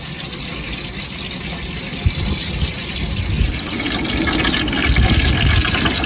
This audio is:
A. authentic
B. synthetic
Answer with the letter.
A